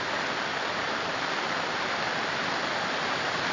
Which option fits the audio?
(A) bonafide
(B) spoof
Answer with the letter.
A